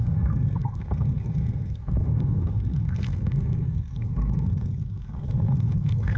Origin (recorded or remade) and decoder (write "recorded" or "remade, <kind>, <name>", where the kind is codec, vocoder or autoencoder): remade, codec, SNAC